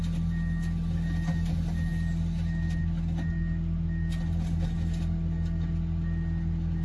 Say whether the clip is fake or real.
real